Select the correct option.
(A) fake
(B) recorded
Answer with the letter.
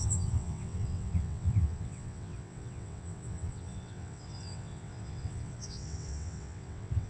A